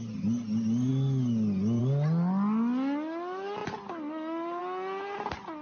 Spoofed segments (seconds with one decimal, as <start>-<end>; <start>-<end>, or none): none